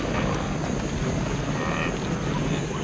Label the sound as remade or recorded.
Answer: recorded